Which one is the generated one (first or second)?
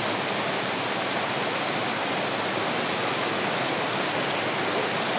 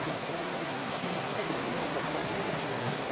second